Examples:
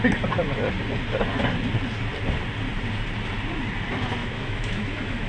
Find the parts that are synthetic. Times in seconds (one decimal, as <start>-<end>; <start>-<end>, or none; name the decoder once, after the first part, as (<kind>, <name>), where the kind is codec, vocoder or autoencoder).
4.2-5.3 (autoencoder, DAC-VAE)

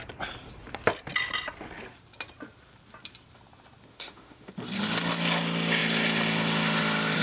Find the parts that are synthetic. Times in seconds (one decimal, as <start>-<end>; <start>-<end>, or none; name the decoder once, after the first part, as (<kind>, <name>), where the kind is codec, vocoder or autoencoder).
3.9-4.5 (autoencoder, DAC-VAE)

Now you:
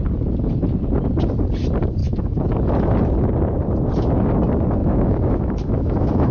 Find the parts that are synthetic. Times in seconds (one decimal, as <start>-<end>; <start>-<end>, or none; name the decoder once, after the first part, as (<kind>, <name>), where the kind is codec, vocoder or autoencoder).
2.0-2.5 (autoencoder, DAC-VAE); 4.8-6.3